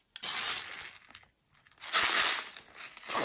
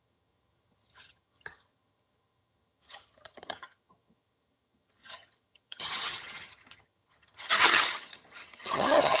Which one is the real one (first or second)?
first